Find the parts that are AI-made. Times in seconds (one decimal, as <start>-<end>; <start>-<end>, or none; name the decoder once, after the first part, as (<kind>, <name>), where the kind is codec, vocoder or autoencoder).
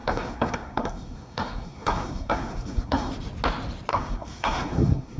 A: 0.0-3.1 (codec, SNAC); 3.9-5.2